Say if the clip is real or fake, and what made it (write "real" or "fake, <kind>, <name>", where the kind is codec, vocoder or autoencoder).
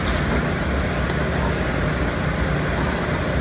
real